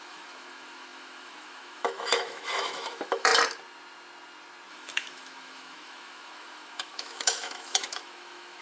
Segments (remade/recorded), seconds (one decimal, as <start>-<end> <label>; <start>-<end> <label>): 0.0-3.3 remade; 3.3-4.7 recorded; 4.7-8.6 remade